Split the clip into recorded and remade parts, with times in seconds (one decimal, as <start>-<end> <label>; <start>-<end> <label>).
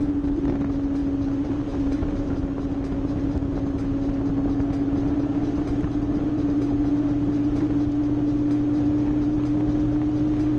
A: 0.0-10.6 recorded